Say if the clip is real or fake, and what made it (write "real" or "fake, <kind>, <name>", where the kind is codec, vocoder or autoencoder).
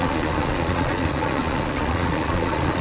fake, vocoder, Vocos